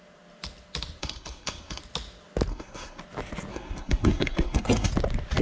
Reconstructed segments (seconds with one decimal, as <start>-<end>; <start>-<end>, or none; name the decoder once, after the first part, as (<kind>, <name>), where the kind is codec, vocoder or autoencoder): 1.0-1.8 (codec, SNAC); 2.5-3.0; 3.5-4.9